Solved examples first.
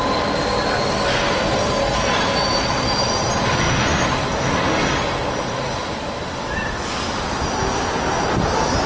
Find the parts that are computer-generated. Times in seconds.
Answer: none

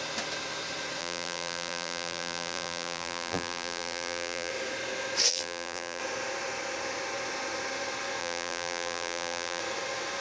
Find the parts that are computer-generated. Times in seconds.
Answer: 1.0-4.5 (vocoder, BigVGAN v2); 5.3-6.0; 8.2-9.6

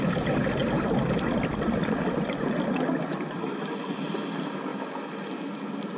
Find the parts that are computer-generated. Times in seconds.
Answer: none

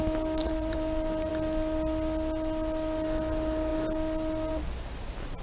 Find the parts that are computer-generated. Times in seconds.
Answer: 0.4-1.3 (vocoder, BigVGAN v2)

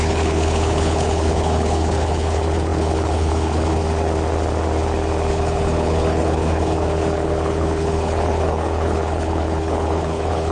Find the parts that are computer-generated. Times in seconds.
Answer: 0.0-3.8 (codec, HILCodec); 5.3-10.5

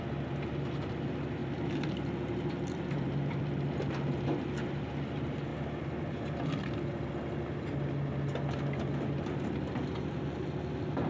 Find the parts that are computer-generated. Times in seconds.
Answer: 1.4-3.7 (vocoder, BigVGAN v2); 5.5-7.1

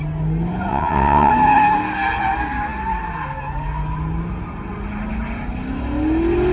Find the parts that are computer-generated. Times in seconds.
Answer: 0.7-1.3 (vocoder, WaveNeXt)